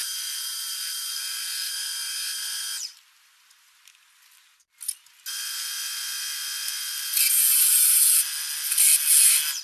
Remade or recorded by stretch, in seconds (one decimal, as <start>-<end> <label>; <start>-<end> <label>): 0.0-1.7 remade; 1.7-9.6 recorded